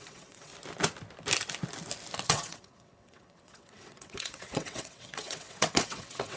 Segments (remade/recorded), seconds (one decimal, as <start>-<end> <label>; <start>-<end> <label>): 0.0-0.5 remade; 0.5-2.3 recorded; 2.3-6.4 remade